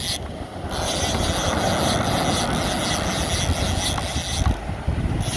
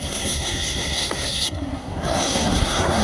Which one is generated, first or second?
second